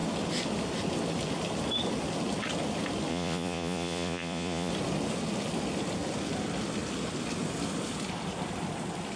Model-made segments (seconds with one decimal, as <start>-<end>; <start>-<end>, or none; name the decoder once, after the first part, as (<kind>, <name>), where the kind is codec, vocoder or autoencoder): 3.1-4.7 (vocoder, Vocos)